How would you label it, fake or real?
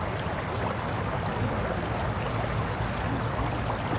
real